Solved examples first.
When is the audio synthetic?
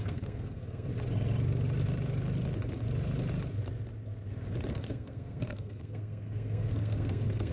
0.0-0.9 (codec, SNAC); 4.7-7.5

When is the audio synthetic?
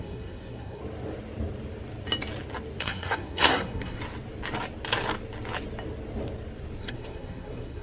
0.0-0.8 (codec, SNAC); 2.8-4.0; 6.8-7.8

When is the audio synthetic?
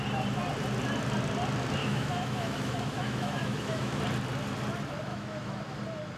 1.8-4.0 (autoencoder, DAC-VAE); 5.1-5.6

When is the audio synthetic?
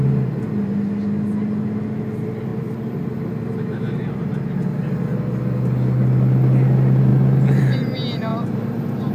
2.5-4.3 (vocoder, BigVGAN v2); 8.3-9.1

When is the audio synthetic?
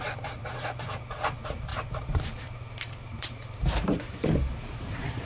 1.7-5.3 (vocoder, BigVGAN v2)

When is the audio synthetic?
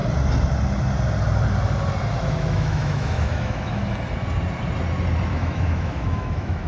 2.2-3.8 (autoencoder, DAC-VAE); 5.3-6.7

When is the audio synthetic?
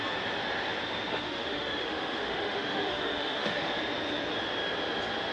1.1-3.7 (autoencoder, DAC-VAE)